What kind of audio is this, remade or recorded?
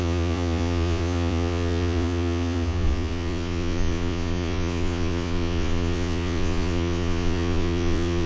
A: remade